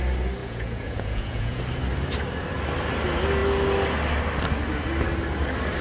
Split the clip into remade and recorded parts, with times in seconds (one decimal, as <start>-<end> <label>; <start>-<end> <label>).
0.0-0.4 recorded; 0.4-1.6 remade; 1.6-5.8 recorded